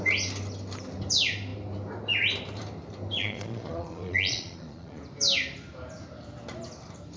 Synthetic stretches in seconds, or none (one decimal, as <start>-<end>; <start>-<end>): 3.2-5.0